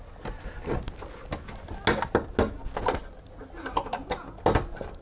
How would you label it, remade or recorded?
recorded